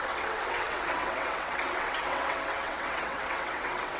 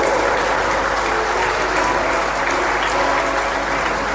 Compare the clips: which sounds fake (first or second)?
first